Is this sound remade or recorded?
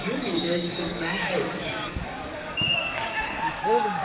remade